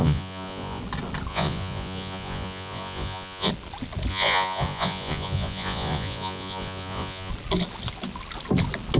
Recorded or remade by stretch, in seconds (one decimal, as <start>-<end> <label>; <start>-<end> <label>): 0.0-0.8 remade; 0.8-1.3 recorded; 1.3-3.5 remade; 3.5-4.1 recorded; 4.1-7.3 remade; 7.3-9.0 recorded